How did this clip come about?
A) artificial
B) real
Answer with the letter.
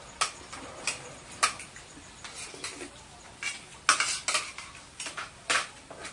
B